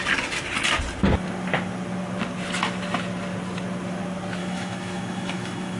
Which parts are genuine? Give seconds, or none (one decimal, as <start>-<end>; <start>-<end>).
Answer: 0.0-4.4